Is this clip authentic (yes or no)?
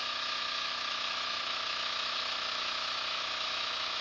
no